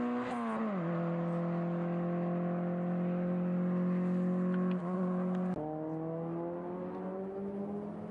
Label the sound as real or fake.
real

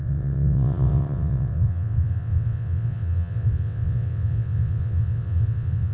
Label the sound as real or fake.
fake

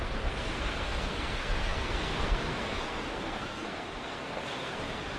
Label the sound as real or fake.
fake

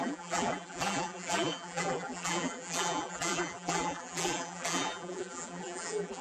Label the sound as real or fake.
fake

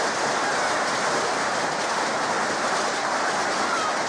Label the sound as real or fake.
real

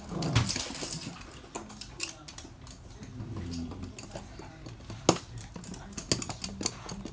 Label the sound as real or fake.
real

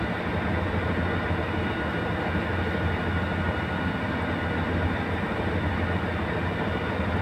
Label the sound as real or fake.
real